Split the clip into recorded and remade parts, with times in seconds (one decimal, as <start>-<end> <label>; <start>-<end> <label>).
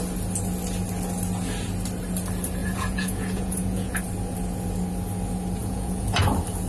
0.0-2.6 recorded; 2.6-4.0 remade; 4.0-5.6 recorded; 5.6-6.2 remade; 6.2-6.7 recorded